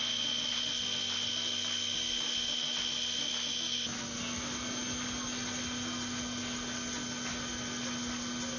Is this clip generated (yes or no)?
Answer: no